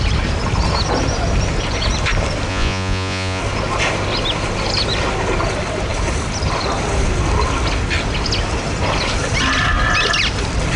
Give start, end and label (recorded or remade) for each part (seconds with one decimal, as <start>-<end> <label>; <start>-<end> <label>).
0.0-2.5 recorded; 2.5-3.4 remade; 3.4-10.8 recorded